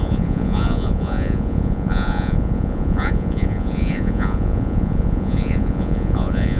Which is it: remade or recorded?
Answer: remade